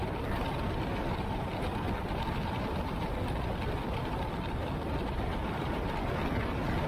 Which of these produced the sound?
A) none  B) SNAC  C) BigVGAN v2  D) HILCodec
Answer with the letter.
A